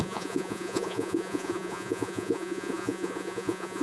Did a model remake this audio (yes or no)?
yes